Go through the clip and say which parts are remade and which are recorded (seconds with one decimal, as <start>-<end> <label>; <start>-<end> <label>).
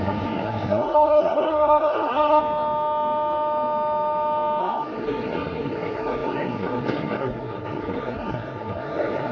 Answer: 0.0-2.4 remade; 2.4-4.6 recorded; 4.6-9.3 remade